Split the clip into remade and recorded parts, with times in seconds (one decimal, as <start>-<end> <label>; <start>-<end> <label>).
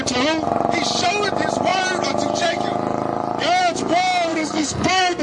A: 0.0-4.3 recorded; 4.3-5.2 remade